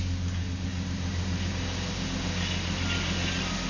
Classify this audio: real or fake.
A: real